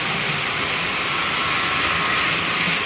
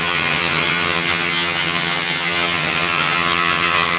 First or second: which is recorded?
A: first